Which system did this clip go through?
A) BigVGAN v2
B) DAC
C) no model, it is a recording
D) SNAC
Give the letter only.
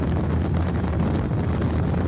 A